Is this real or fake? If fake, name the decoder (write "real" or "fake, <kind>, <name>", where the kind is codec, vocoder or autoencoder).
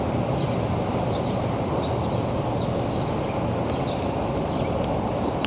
real